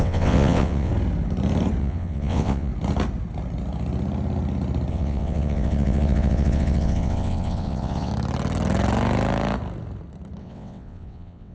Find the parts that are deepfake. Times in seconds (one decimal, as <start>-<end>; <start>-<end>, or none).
0.0-0.9; 1.8-2.7; 4.9-8.1; 10.4-11.5